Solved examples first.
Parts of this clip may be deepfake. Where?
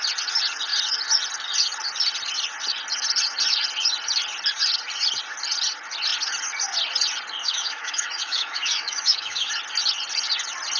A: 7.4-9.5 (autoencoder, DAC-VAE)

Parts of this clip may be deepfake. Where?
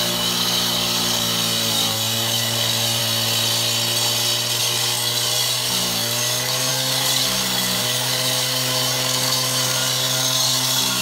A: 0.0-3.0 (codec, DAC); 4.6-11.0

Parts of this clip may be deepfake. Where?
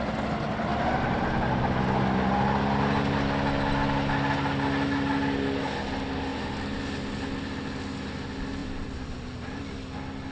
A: 8.6-9.6 (vocoder, BigVGAN v2)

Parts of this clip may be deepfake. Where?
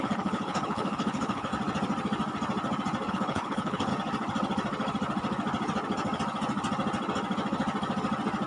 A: 0.0-1.5 (codec, HILCodec); 3.1-3.9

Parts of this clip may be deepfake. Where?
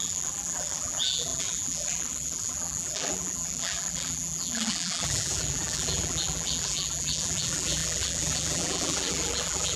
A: 0.0-9.8 (vocoder, BigVGAN v2)